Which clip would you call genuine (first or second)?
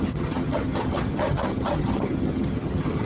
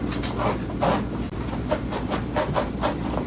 second